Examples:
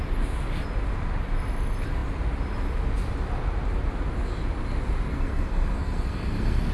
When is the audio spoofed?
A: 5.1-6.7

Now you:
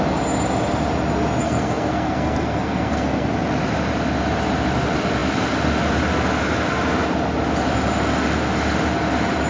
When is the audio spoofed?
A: 1.4-3.3

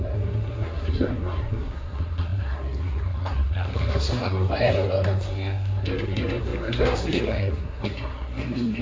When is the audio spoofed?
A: 0.0-8.8

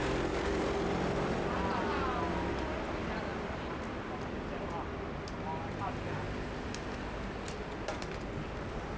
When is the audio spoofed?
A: none

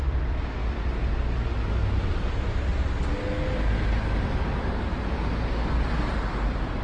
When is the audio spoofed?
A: none